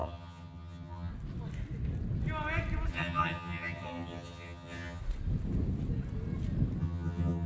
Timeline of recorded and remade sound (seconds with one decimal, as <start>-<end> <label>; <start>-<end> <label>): 0.0-1.1 remade; 1.1-2.9 recorded; 2.9-5.0 remade; 5.0-6.8 recorded; 6.8-7.5 remade